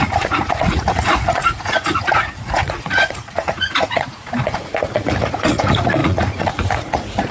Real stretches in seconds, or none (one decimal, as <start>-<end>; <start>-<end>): none